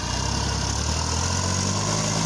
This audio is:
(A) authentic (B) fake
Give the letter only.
A